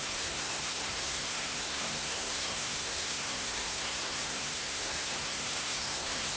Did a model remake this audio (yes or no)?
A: yes